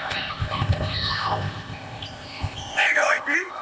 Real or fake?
fake